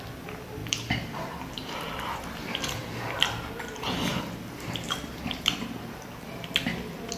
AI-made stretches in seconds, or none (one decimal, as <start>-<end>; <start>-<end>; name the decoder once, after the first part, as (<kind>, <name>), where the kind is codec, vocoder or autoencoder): 0.6-3.6 (vocoder, BigVGAN v2)